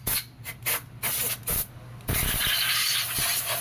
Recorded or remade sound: recorded